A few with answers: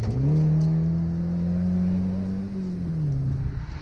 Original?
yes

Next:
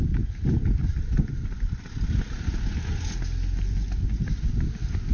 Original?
yes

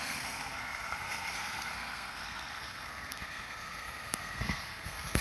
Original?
no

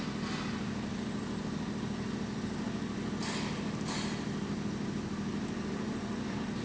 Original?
yes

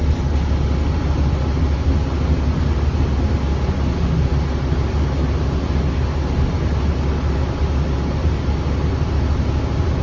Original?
yes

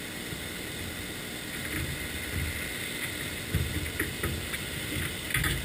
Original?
yes